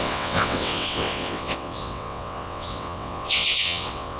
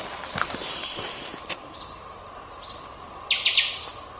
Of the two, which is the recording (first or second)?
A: second